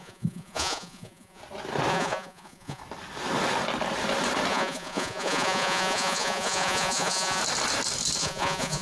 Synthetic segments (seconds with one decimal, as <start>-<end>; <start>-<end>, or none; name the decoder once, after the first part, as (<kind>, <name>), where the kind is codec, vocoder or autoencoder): 0.0-1.4 (vocoder, Vocos); 1.9-2.8; 4.5-7.4; 8.2-8.8